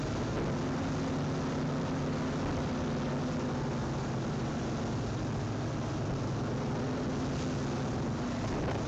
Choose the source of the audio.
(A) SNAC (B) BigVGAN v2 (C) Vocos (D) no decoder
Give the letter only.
D